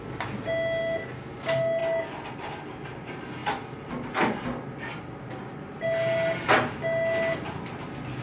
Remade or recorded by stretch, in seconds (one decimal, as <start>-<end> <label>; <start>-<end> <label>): 0.0-8.2 recorded